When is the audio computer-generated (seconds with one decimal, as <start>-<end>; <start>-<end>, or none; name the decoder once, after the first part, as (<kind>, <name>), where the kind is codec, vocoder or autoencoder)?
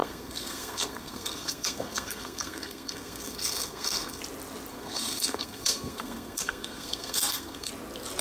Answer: 0.0-4.2 (codec, SNAC); 4.7-7.7